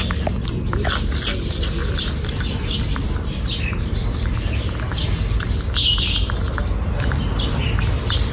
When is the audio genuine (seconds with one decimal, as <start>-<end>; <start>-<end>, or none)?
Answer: 0.0-1.3; 2.1-4.0; 6.5-8.3